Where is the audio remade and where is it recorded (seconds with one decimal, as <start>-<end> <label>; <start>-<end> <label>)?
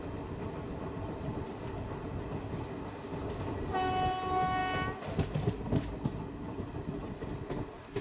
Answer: 0.0-8.0 recorded